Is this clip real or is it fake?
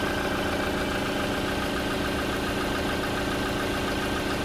real